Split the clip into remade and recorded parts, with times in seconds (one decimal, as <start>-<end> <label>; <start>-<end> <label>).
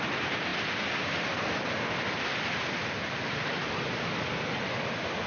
0.0-5.3 recorded